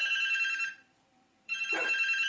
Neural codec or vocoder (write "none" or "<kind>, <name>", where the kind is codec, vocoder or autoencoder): vocoder, BigVGAN v2